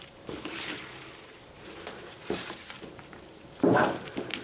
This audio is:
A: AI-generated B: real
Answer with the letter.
A